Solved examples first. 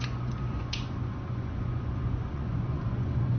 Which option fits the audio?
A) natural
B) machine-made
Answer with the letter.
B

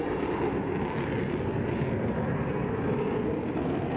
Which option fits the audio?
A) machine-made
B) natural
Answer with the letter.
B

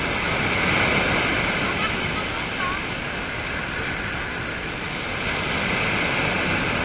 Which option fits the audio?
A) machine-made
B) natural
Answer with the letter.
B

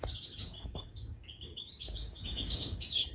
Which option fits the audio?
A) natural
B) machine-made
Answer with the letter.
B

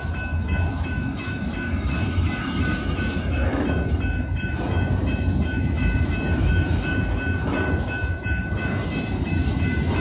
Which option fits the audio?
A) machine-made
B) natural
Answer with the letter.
A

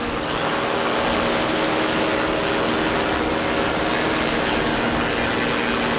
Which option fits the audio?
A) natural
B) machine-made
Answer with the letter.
A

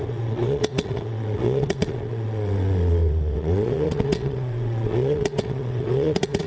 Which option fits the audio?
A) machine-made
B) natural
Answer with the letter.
A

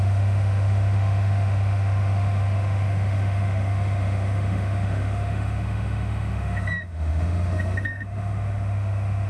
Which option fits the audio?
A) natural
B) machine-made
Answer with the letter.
B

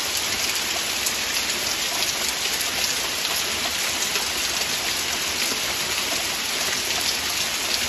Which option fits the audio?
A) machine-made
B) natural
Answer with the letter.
B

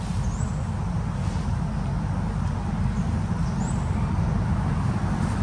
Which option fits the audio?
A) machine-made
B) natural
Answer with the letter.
B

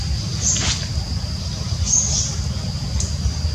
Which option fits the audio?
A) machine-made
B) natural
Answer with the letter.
B